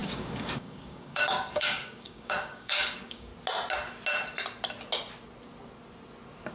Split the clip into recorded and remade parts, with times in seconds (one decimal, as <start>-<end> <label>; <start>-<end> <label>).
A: 0.0-3.3 remade; 3.3-6.5 recorded